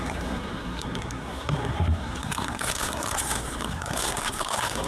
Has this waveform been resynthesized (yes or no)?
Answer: yes